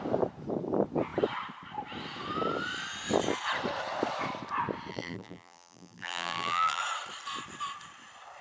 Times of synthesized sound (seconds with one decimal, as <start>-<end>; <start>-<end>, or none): 4.9-6.8